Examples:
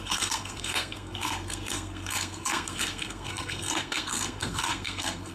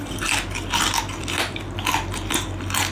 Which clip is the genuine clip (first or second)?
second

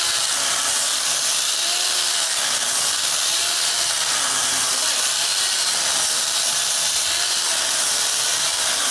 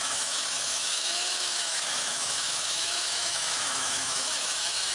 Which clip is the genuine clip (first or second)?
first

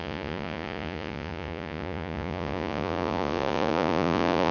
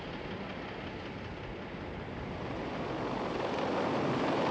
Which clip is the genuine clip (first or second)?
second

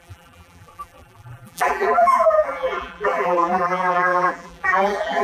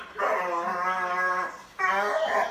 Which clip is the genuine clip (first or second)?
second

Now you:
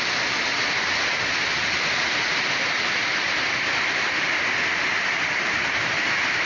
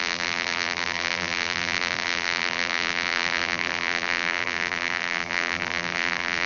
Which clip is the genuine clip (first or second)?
first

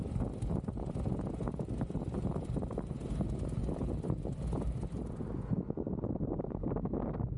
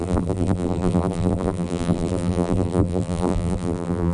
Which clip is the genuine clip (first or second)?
first